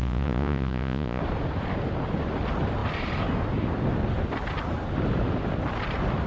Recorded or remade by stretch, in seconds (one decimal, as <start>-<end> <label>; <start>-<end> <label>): 0.0-1.2 remade; 1.2-6.3 recorded